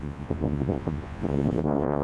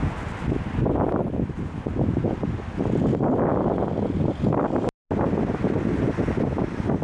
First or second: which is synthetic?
first